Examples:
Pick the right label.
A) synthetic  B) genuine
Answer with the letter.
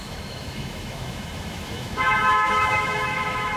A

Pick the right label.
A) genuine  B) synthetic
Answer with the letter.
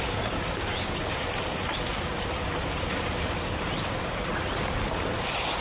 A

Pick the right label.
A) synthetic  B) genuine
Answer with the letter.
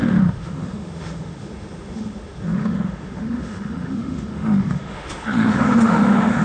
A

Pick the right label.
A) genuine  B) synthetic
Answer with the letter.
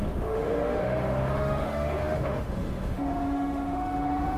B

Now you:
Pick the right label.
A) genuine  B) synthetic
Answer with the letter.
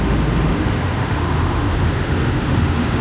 B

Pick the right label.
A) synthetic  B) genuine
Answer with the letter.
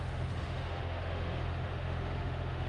A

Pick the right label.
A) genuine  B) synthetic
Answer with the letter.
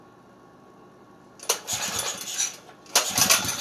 A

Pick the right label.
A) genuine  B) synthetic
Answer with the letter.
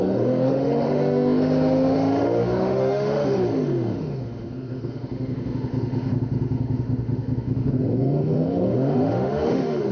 B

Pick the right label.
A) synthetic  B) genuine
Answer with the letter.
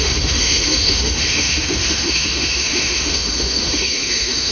A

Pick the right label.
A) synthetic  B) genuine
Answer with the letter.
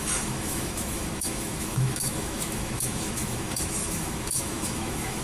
A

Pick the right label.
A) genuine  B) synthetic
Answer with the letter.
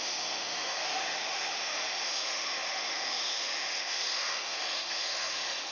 B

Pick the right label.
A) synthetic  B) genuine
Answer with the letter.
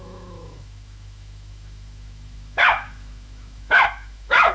A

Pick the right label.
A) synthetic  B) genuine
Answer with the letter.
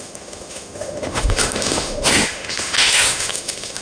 A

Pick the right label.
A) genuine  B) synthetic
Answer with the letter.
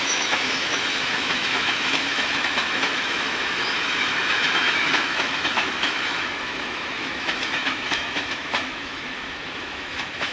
B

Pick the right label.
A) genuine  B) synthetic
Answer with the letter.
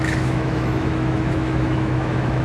B